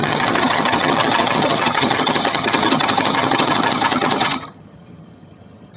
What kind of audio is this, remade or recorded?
remade